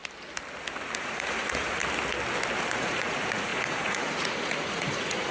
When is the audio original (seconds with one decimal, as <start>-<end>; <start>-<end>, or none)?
0.0-1.0; 1.8-2.7